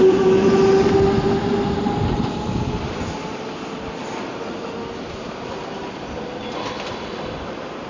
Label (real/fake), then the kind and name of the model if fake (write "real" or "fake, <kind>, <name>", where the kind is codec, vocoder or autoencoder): real